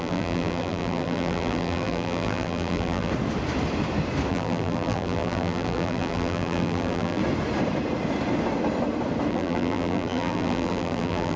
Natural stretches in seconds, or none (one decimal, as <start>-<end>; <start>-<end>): 3.1-4.3; 7.2-9.3

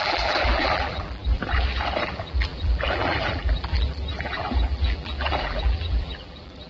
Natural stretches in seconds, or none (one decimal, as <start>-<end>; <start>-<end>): 1.4-2.0